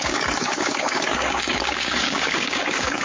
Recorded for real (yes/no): no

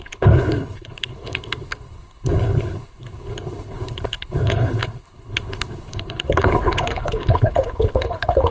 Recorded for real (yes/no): no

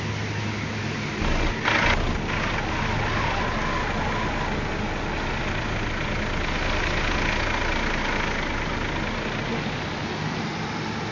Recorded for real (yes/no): yes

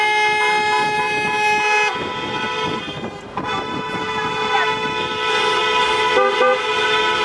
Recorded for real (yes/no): yes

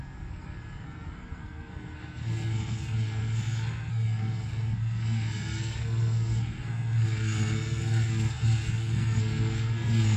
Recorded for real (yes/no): no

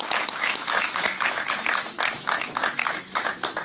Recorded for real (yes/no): no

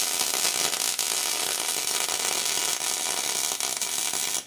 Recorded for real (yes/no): yes